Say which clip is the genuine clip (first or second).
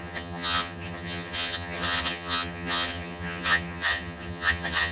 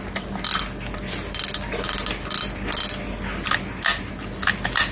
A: second